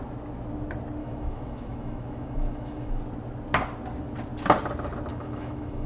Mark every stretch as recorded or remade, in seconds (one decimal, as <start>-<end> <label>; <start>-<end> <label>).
0.0-1.0 recorded; 1.0-3.0 remade; 3.0-5.1 recorded; 5.1-5.9 remade